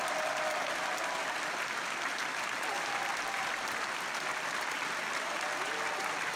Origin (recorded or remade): recorded